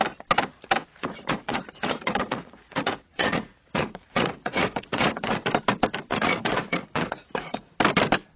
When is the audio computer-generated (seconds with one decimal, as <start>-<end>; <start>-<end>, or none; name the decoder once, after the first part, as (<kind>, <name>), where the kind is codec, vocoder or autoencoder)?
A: 0.9-5.4 (vocoder, Vocos); 6.1-7.8